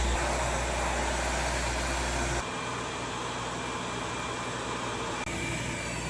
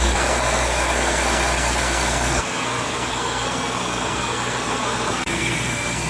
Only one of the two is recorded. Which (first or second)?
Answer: first